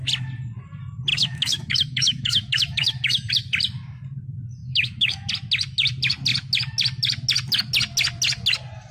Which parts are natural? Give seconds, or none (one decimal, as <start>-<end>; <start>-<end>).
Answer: 0.0-1.1; 3.3-4.6; 5.3-8.9